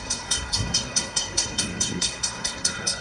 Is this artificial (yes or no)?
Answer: yes